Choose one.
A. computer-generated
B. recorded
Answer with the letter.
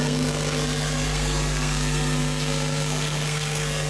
A